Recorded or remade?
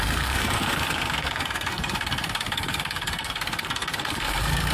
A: remade